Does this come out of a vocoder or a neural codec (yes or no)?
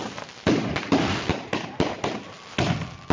no